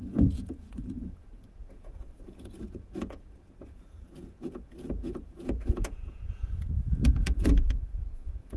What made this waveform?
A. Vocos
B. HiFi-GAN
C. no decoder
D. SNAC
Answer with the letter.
A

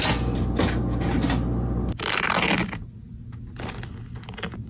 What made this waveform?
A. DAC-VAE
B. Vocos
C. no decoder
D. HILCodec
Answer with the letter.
C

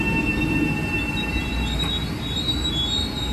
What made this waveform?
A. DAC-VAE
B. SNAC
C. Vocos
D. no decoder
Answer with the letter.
D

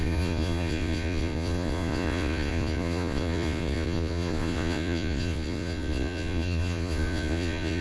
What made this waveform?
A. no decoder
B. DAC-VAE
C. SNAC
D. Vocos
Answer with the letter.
D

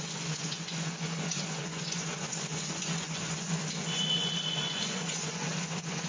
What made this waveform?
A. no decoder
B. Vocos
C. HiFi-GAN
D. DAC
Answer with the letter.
B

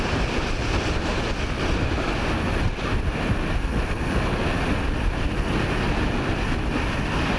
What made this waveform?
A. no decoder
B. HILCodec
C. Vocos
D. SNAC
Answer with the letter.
A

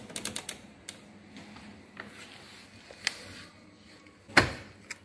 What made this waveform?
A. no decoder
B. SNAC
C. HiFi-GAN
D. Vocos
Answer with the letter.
A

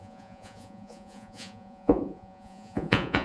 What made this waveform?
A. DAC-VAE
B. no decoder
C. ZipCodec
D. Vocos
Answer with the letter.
D